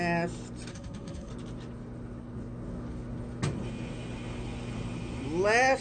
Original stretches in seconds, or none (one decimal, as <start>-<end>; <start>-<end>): 0.0-0.7; 1.3-5.8

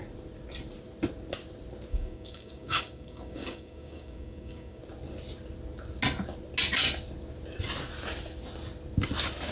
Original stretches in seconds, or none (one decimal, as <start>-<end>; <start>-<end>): 0.0-1.9; 4.8-9.5

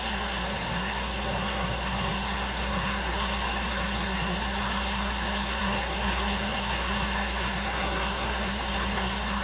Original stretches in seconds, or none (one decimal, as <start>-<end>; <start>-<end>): none

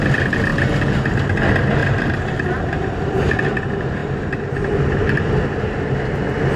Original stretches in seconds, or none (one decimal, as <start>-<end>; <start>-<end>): 0.0-1.8; 2.9-6.6

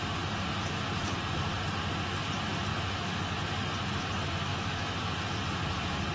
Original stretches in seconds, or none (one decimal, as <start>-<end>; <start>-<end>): 0.0-2.7; 3.4-4.5; 5.1-6.1

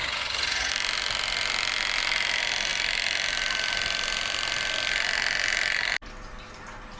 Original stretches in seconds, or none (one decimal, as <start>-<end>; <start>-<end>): 0.7-7.0